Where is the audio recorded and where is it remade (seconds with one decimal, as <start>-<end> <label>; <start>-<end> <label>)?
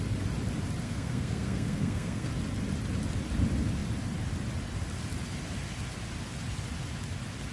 0.0-0.8 recorded; 0.8-2.3 remade; 2.3-7.5 recorded